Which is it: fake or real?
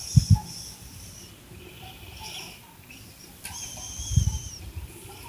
real